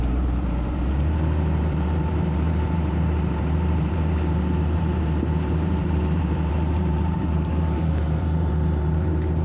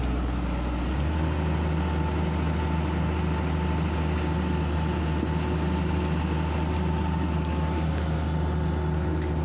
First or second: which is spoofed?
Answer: first